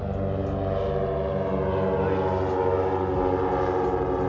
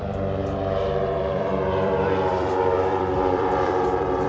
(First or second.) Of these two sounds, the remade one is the second